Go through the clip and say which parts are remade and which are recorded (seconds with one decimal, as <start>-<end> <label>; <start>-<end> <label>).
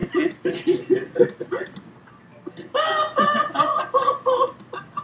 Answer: 0.0-5.0 recorded